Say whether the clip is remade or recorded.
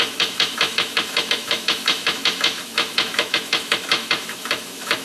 remade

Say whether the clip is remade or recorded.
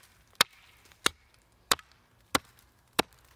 remade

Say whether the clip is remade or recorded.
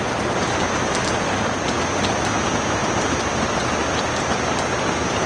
recorded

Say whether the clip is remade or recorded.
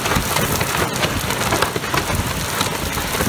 recorded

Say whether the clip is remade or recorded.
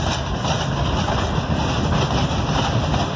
recorded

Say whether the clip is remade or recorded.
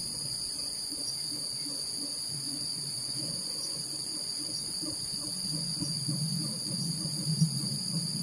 remade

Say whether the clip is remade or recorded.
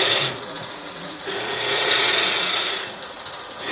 remade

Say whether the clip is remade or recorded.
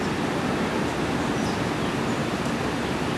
recorded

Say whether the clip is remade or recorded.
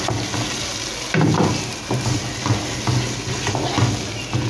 recorded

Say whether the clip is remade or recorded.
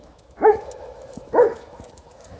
remade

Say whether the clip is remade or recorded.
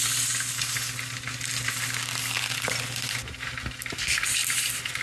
recorded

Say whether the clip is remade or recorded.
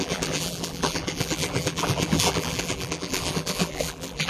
remade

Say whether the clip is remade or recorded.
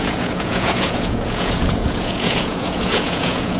remade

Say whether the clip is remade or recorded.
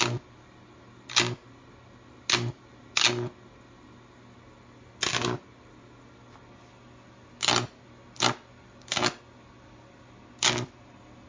recorded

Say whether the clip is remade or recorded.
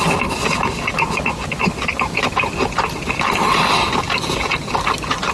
recorded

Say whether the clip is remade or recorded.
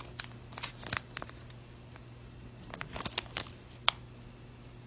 recorded